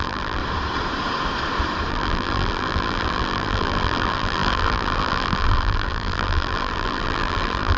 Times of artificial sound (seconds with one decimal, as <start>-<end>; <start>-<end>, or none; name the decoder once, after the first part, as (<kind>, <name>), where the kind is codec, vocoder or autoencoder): 0.0-0.4 (vocoder, BigVGAN v2); 1.9-7.8